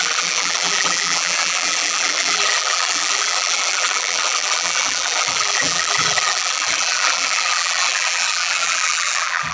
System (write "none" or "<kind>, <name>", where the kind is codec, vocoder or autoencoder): vocoder, BigVGAN v2